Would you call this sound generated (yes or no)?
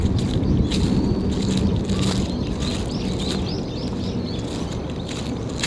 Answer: no